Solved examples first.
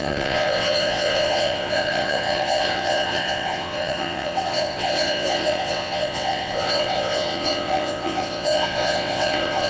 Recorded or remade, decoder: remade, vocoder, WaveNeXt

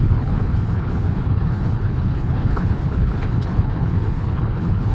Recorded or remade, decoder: remade, codec, HILCodec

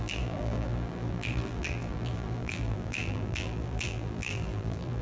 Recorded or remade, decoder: remade, vocoder, BigVGAN v2